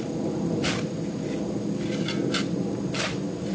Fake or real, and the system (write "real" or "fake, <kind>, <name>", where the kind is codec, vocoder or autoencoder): real